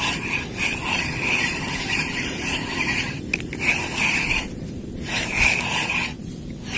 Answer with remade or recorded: recorded